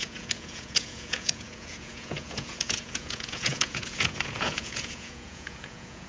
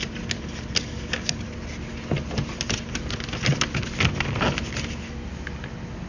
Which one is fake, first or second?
first